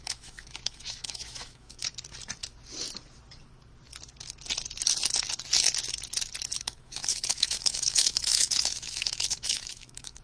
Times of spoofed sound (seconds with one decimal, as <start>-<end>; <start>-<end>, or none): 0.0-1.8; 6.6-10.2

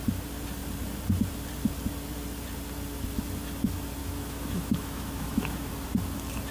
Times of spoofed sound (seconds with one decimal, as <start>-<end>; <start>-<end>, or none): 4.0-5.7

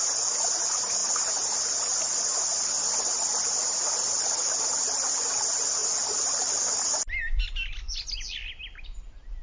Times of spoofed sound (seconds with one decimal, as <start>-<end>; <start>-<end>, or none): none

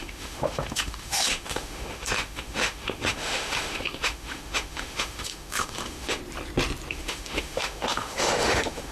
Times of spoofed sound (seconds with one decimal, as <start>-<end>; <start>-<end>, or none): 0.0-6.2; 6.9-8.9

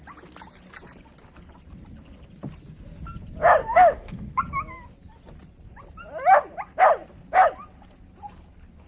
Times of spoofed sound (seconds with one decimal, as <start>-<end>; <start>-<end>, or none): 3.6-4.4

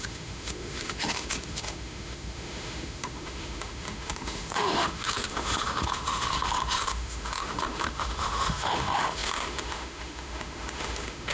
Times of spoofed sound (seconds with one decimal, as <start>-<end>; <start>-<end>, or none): 0.0-11.3

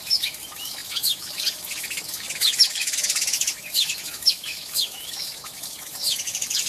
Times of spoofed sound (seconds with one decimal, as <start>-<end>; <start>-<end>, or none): 0.0-6.7